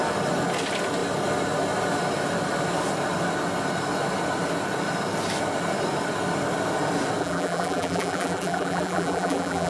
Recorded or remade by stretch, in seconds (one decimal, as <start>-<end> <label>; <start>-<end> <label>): 0.0-7.2 recorded; 7.2-9.7 remade